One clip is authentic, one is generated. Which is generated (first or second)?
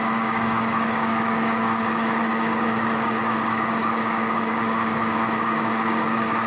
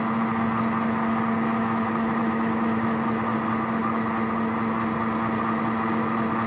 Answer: first